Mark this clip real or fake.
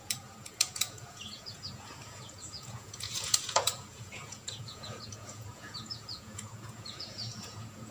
fake